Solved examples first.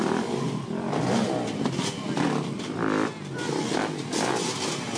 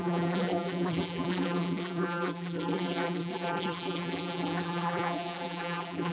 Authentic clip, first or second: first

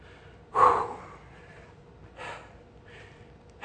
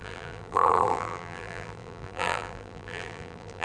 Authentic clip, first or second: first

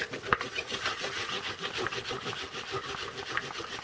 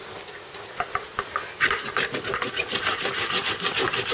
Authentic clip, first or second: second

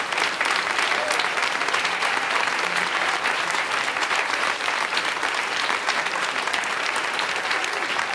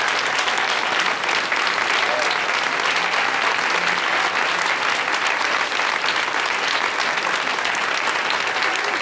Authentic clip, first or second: second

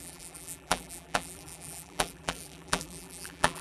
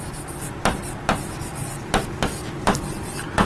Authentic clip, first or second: second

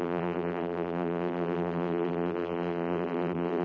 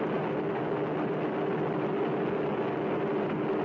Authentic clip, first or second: second